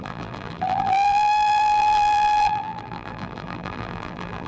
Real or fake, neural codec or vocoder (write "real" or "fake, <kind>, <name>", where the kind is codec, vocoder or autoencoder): fake, vocoder, BigVGAN v2